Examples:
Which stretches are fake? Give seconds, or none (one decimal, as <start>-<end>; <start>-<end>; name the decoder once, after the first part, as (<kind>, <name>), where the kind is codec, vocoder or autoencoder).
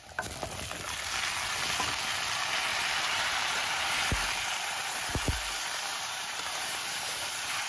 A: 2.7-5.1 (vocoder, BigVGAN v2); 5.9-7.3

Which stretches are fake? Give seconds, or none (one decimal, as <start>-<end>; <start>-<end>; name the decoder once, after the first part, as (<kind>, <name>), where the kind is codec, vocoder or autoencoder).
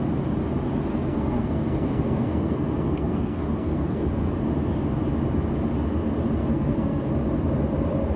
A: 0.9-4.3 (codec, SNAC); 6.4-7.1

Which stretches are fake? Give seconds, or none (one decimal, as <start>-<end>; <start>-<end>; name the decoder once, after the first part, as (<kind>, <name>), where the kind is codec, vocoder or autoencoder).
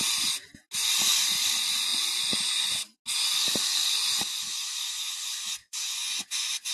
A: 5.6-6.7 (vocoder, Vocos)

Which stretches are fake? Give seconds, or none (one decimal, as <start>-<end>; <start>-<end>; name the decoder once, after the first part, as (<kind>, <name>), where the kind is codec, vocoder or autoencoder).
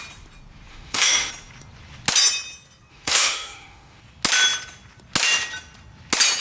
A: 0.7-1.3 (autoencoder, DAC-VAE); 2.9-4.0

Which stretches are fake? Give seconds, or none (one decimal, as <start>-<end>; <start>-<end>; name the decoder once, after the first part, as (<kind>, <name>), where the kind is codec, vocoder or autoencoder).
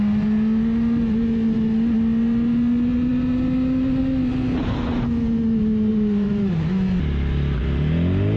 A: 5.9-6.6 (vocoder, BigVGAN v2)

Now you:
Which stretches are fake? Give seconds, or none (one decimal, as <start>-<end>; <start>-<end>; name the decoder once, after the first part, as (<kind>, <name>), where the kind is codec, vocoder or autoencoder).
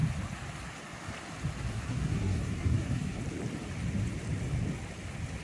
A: 1.7-3.2 (codec, SNAC)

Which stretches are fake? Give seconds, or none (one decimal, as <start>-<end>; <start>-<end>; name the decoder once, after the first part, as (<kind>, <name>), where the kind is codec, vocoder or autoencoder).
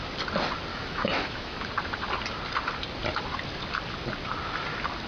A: 0.7-1.7 (autoencoder, DAC-VAE)